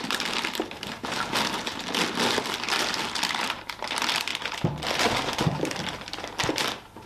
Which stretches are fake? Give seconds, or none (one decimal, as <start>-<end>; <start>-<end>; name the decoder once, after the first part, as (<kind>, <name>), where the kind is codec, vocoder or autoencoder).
none

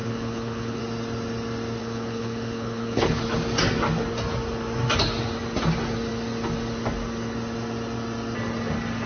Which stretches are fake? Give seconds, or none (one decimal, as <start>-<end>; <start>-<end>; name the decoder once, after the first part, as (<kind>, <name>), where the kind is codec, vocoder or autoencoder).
0.0-0.8 (codec, HILCodec); 1.8-3.2

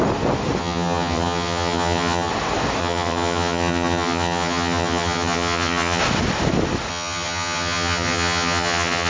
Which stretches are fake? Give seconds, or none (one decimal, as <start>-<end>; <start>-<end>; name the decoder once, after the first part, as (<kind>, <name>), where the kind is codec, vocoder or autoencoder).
0.6-2.3 (vocoder, HiFi-GAN); 2.8-6.0; 6.9-9.1

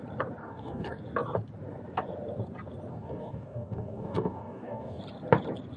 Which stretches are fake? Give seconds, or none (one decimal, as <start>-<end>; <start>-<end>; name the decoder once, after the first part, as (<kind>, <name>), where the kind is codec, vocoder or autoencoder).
0.4-1.0 (codec, DAC); 2.9-5.0

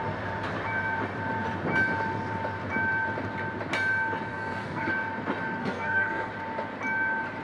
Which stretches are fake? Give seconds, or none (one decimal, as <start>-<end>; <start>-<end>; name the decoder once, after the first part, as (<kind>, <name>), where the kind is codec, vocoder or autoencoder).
4.3-4.9 (codec, SNAC); 5.6-6.3

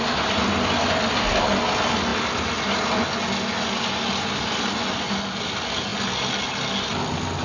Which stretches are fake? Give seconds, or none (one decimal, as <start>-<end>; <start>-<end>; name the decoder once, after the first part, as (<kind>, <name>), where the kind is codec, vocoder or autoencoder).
none

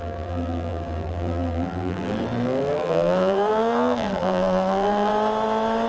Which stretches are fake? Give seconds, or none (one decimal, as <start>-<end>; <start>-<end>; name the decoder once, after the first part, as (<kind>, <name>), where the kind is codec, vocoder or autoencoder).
0.0-5.1 (vocoder, BigVGAN v2)